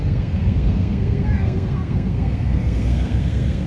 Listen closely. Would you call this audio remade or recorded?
remade